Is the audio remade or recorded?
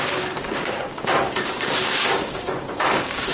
remade